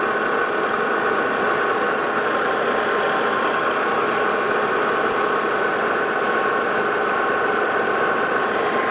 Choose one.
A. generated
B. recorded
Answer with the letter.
B